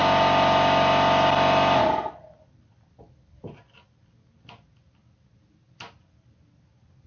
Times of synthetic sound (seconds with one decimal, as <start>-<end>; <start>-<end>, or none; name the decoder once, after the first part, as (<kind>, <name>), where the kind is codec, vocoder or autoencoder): none